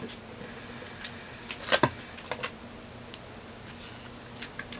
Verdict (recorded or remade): recorded